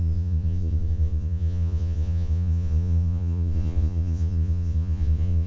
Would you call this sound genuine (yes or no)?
no